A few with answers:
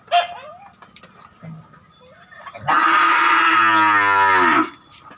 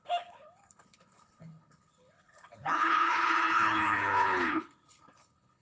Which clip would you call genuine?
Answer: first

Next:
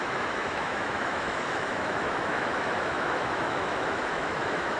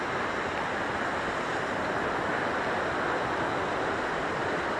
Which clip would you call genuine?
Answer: second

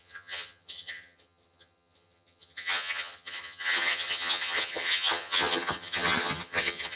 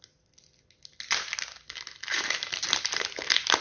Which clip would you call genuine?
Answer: second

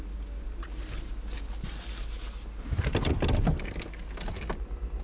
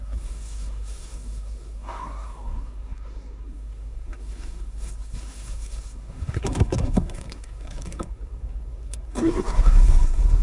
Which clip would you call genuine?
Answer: first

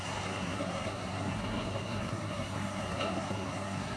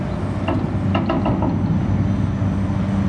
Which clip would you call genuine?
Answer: second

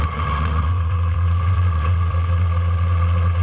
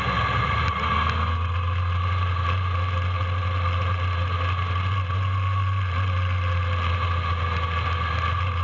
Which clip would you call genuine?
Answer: second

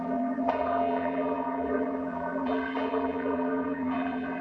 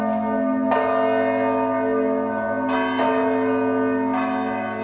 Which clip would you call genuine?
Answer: second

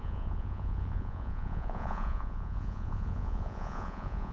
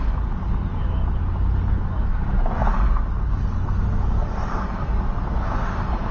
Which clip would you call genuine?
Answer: second